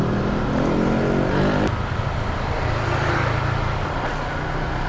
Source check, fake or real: real